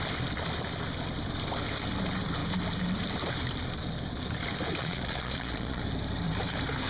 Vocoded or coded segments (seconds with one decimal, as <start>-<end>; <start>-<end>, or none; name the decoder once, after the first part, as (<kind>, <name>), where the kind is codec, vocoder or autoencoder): 4.8-5.8 (vocoder, Vocos)